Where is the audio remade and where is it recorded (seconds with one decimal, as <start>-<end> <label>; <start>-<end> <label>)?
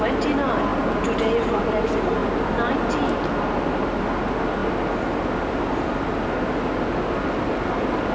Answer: 0.0-8.1 recorded